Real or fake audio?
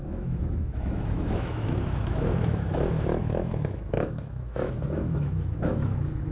fake